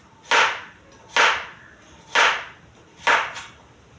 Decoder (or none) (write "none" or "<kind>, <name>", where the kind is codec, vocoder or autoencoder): none